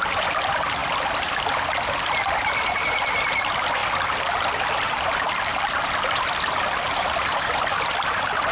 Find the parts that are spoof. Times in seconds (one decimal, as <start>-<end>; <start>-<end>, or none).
none

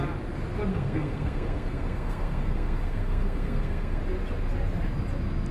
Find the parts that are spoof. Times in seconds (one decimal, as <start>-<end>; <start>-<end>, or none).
0.7-4.0

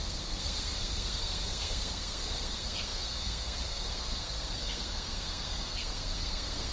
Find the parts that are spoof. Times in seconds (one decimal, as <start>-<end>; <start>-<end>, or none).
0.0-6.7

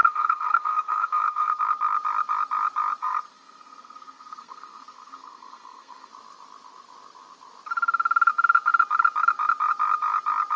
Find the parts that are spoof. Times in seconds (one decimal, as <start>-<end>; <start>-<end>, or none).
0.0-1.6; 3.0-6.1

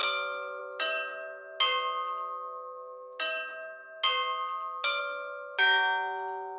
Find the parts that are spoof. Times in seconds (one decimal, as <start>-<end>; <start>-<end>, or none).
none

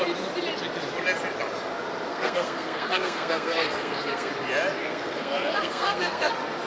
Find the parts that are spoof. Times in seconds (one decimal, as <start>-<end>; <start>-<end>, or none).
2.1-4.3; 4.8-6.3